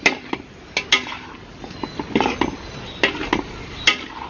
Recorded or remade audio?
recorded